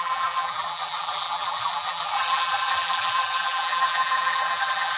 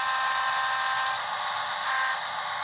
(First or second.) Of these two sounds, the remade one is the first